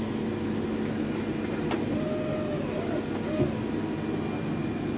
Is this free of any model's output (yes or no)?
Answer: yes